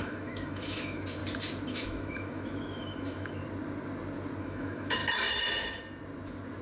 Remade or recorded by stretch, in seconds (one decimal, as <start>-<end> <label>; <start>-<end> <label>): 0.0-1.2 remade; 1.2-1.7 recorded; 1.7-3.4 remade; 3.4-4.4 recorded; 4.4-5.0 remade; 5.0-6.6 recorded